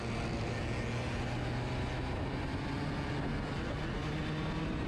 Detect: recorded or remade recorded